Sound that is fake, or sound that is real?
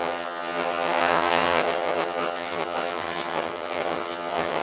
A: fake